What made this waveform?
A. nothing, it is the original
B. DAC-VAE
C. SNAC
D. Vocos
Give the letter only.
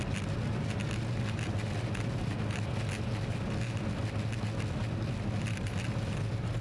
A